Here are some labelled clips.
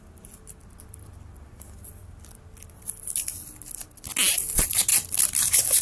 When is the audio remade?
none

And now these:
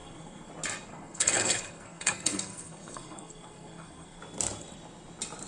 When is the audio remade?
0.0-0.5 (codec, SNAC); 0.9-4.2

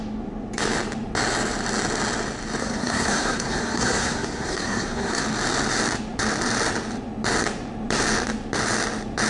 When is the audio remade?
2.6-5.2 (codec, SNAC)

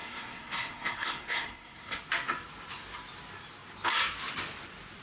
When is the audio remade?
0.0-2.0 (codec, SNAC)